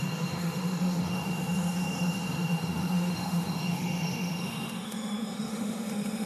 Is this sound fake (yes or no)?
yes